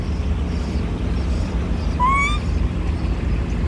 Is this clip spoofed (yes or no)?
no